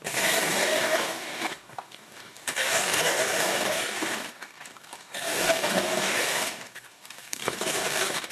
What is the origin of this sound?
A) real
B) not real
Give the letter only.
B